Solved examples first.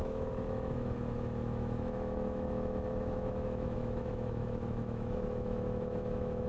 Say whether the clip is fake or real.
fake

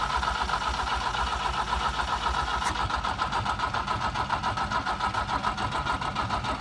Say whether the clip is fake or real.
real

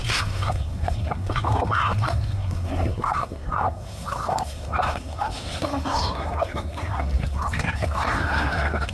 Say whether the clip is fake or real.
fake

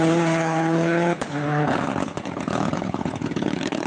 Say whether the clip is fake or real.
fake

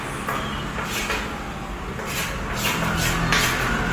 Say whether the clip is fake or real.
real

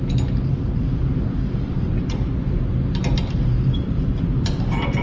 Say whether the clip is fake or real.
real